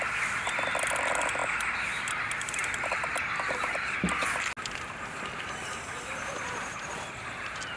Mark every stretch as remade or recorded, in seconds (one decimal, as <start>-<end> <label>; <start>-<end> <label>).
0.0-7.8 recorded